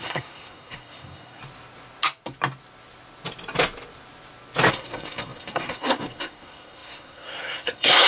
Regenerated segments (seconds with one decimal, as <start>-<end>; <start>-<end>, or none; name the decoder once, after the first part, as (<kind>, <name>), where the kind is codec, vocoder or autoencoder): 0.0-1.4 (codec, SNAC); 4.7-8.1